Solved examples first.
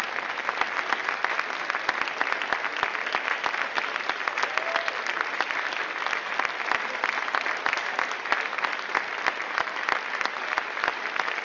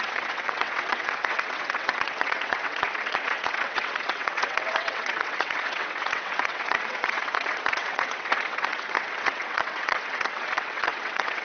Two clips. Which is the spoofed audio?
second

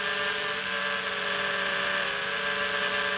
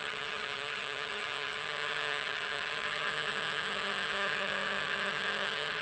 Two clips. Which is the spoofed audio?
second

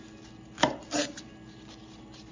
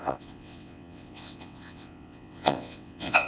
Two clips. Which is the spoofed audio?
second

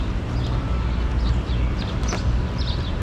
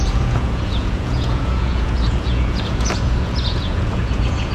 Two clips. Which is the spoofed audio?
second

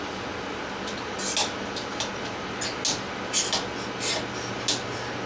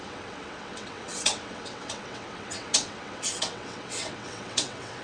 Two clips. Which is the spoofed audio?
second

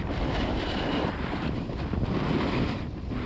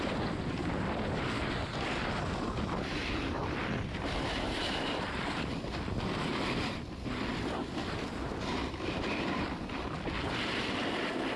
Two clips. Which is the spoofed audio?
first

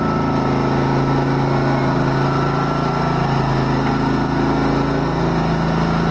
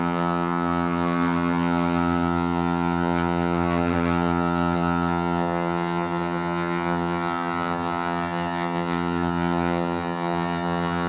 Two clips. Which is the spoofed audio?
second